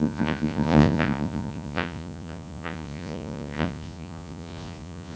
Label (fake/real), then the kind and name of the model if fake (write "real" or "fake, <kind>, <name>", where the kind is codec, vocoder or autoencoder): fake, vocoder, Vocos